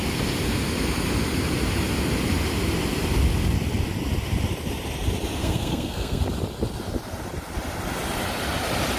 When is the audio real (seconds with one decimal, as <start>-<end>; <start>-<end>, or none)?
0.0-5.4; 6.2-9.0